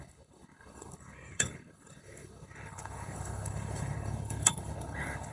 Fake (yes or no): yes